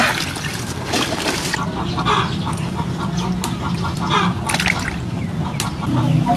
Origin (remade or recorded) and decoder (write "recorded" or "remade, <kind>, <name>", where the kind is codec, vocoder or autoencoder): recorded